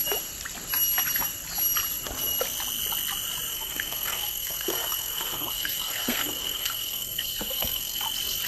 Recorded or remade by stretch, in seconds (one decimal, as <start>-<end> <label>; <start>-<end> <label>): 0.0-3.5 recorded; 3.5-8.0 remade; 8.0-8.5 recorded